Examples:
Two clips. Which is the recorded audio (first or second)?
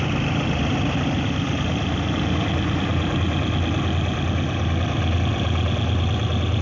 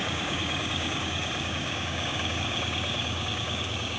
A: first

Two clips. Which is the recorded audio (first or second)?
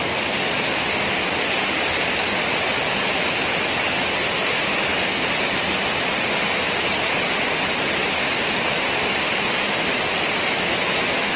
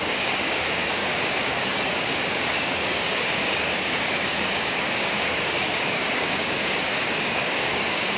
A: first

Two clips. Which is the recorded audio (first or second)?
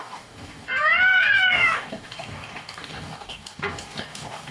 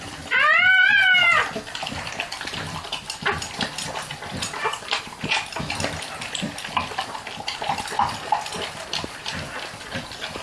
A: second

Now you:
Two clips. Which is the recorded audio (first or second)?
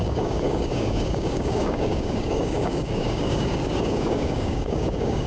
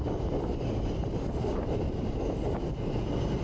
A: second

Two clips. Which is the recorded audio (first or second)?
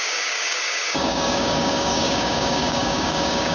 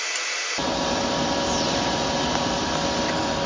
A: second